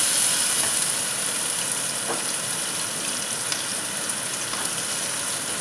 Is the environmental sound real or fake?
real